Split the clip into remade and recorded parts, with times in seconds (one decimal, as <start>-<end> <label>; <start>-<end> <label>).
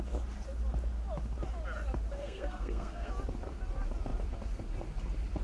0.0-2.2 recorded; 2.2-3.1 remade; 3.1-5.4 recorded